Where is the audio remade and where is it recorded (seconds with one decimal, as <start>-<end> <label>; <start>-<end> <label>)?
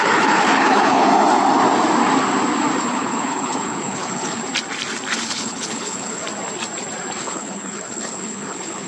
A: 0.0-1.1 remade; 1.1-2.8 recorded; 2.8-4.4 remade; 4.4-5.2 recorded; 5.2-6.2 remade; 6.2-7.2 recorded; 7.2-8.9 remade